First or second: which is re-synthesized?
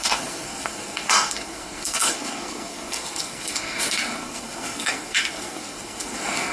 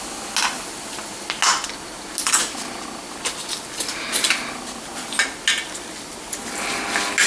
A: first